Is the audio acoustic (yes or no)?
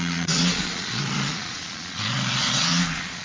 no